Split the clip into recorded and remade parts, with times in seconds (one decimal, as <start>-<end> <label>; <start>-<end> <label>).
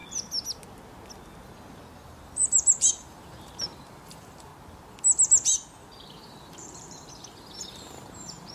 0.0-2.2 recorded; 2.2-4.5 remade; 4.5-6.1 recorded; 6.1-8.5 remade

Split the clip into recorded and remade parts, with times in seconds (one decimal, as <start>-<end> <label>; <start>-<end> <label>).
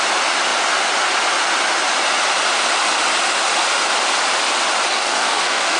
0.0-4.9 recorded; 4.9-5.8 remade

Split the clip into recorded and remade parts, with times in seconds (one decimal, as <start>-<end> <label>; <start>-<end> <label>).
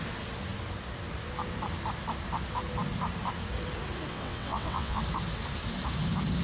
0.0-4.1 recorded; 4.1-5.0 remade; 5.0-6.4 recorded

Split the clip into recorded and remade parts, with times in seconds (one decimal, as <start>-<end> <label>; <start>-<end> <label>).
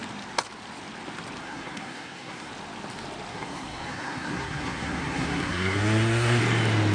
0.0-1.4 recorded; 1.4-2.5 remade; 2.5-3.3 recorded; 3.3-6.4 remade; 6.4-6.9 recorded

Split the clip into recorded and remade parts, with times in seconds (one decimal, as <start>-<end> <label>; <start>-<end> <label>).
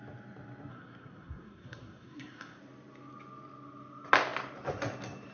0.0-0.7 recorded; 0.7-2.6 remade; 2.6-5.3 recorded